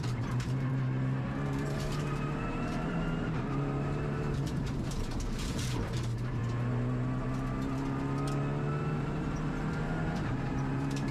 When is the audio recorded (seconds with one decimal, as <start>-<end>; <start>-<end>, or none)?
6.4-8.8